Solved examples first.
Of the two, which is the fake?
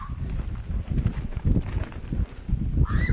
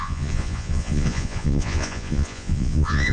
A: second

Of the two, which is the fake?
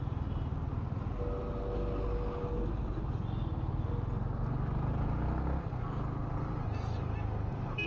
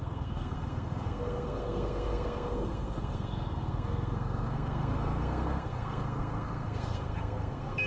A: second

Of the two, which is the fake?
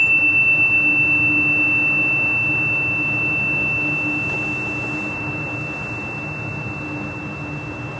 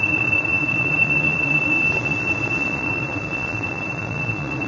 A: second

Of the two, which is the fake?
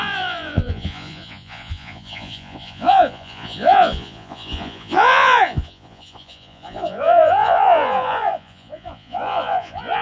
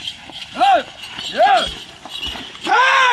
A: first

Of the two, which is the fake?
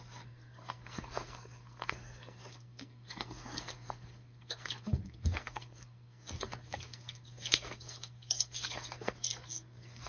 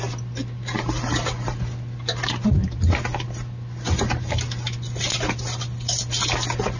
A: first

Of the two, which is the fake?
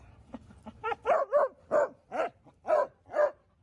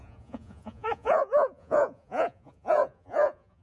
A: second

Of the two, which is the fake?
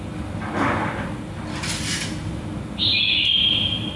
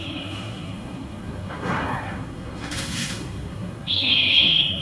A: second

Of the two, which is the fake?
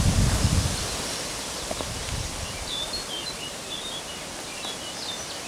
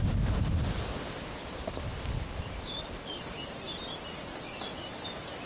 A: first